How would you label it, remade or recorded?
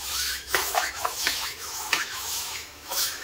remade